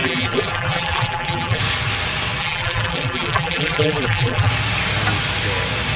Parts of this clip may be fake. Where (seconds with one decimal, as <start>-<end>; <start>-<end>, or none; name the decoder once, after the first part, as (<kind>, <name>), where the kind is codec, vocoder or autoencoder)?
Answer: 0.0-1.6 (vocoder, BigVGAN v2); 2.4-4.5